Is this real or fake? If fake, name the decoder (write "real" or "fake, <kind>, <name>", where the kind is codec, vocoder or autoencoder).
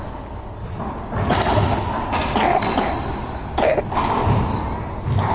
real